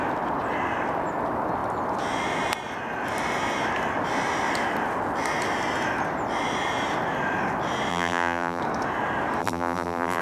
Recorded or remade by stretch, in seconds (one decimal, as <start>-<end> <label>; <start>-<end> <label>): 0.0-7.9 recorded; 7.9-8.6 remade; 8.6-9.4 recorded; 9.4-10.2 remade